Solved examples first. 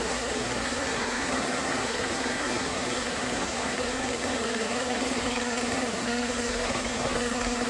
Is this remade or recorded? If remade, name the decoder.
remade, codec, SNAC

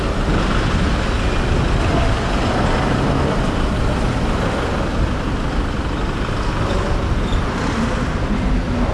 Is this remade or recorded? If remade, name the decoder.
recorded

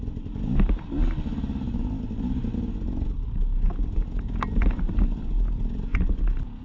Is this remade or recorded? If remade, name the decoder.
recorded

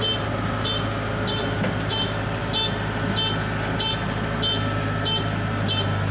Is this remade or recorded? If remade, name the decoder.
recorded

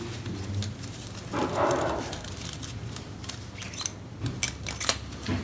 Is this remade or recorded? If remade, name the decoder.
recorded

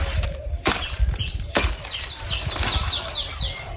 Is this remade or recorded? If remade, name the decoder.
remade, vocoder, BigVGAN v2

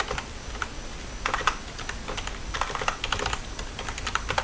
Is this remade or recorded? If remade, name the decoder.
recorded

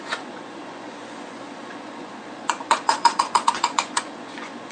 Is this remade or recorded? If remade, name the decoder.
remade, vocoder, Vocos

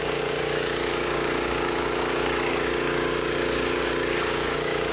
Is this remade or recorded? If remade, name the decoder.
remade, codec, DAC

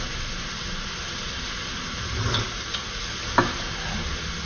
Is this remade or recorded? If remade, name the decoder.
recorded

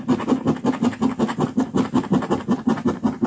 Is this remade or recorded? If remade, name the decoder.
recorded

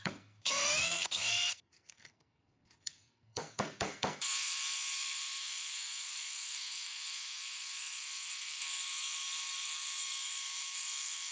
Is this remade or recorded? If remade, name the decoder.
remade, codec, SNAC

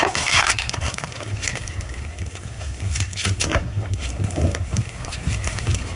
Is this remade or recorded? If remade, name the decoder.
remade, codec, SNAC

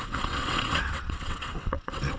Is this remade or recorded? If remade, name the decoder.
remade, vocoder, WaveNeXt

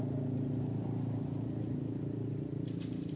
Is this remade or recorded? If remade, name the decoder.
recorded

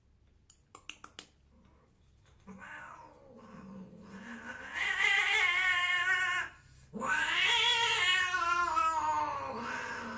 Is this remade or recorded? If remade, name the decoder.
recorded